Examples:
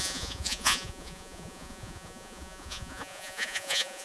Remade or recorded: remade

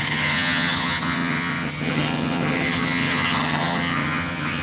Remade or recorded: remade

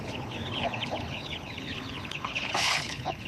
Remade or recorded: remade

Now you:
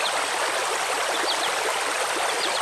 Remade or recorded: recorded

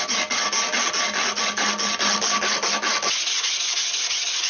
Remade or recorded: recorded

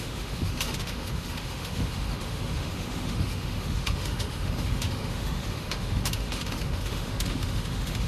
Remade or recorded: remade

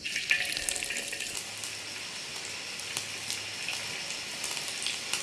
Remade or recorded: recorded